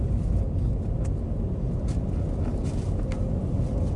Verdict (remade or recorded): recorded